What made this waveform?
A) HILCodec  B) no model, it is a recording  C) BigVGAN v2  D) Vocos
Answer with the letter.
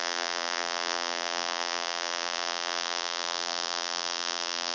C